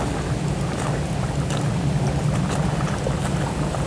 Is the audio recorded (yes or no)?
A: yes